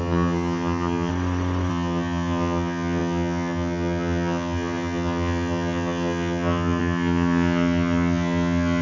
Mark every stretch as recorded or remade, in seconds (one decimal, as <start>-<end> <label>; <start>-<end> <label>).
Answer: 0.0-1.1 remade; 1.1-1.7 recorded; 1.7-8.8 remade